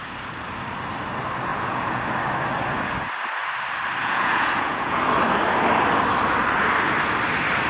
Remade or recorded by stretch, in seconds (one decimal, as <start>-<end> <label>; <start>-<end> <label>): 0.0-1.5 recorded; 1.5-2.0 remade; 2.0-4.0 recorded; 4.0-5.0 remade; 5.0-7.7 recorded